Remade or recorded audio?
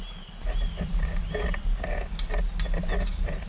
recorded